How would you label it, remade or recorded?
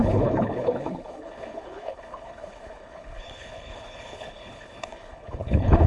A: remade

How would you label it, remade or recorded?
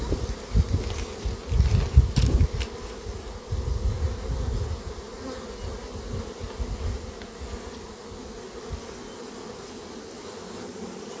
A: recorded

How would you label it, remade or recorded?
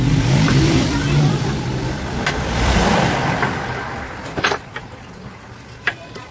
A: remade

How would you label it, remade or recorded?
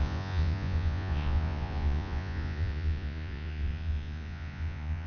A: remade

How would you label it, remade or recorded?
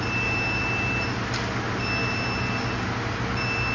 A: recorded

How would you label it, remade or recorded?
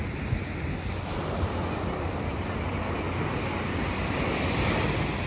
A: recorded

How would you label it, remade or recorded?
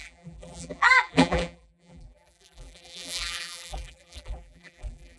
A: remade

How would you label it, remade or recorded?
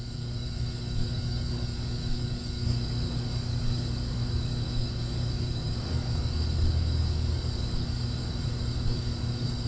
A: remade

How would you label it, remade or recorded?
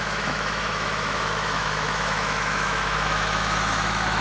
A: remade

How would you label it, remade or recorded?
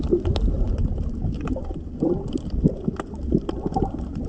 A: remade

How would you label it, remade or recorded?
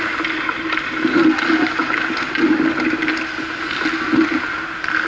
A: recorded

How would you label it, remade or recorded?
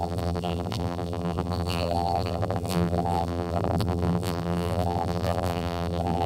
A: remade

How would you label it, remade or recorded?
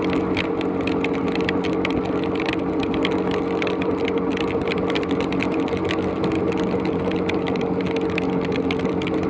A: recorded